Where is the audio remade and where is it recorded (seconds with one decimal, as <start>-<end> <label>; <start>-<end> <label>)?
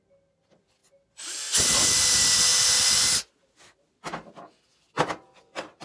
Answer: 0.0-5.8 recorded